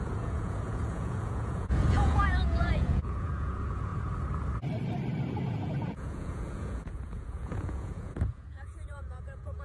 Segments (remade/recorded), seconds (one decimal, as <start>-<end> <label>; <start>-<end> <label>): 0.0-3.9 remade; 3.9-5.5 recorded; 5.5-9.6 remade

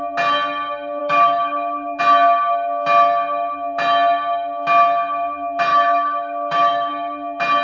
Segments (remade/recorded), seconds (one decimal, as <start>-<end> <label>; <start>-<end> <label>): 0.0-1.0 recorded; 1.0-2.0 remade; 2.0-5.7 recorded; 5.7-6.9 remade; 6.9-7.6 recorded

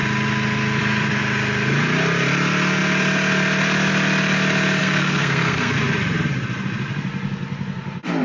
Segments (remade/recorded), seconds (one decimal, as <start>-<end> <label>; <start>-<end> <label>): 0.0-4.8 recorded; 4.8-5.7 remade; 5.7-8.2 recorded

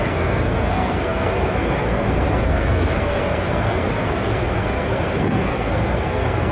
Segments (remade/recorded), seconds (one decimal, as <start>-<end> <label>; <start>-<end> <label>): 0.0-6.5 remade

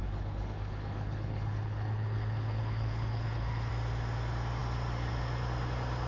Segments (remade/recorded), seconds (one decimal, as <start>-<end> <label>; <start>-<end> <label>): 0.0-3.7 remade; 3.7-6.1 recorded

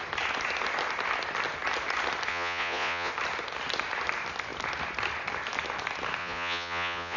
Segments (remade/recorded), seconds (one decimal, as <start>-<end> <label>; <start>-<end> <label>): 0.0-2.3 recorded; 2.3-3.1 remade; 3.1-6.2 recorded; 6.2-7.2 remade

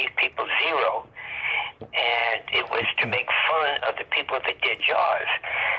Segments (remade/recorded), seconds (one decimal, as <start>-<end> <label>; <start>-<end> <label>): 0.0-0.8 remade; 0.8-1.5 recorded; 1.5-5.8 remade

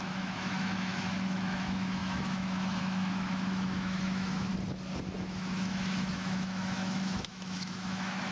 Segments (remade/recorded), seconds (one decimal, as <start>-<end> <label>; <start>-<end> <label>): 0.0-4.5 remade; 4.5-5.2 recorded; 5.2-8.3 remade